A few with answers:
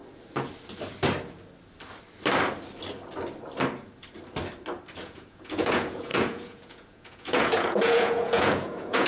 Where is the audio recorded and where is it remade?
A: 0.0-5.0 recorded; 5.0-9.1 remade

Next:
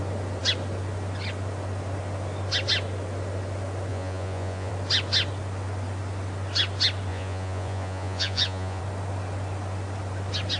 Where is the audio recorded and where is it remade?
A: 0.0-3.9 recorded; 3.9-4.7 remade; 4.7-7.1 recorded; 7.1-8.8 remade; 8.8-10.6 recorded